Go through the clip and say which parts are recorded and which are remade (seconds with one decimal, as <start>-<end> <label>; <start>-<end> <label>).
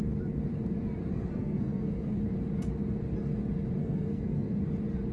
0.0-1.1 recorded; 1.1-2.2 remade; 2.2-3.8 recorded; 3.8-4.6 remade; 4.6-5.1 recorded